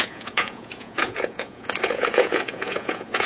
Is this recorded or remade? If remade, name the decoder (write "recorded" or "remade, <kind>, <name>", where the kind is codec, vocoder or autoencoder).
remade, vocoder, Vocos